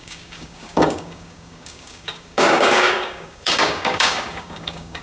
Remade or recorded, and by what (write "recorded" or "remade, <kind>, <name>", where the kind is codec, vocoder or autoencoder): remade, codec, DAC